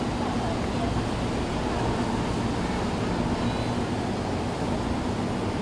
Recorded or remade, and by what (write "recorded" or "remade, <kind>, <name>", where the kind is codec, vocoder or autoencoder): recorded